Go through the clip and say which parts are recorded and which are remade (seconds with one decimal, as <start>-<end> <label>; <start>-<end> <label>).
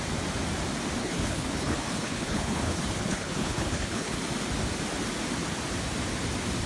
0.0-1.0 recorded; 1.0-4.2 remade; 4.2-6.7 recorded